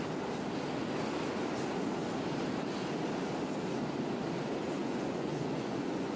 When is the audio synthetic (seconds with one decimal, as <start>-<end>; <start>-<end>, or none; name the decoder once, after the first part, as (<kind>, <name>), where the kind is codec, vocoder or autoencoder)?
4.8-6.2 (vocoder, Vocos)